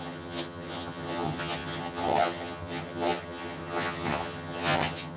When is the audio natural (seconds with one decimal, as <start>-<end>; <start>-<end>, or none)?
none